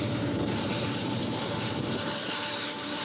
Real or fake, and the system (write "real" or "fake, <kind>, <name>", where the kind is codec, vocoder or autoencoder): fake, vocoder, BigVGAN v2